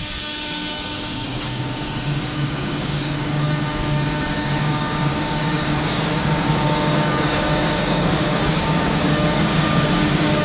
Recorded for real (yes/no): no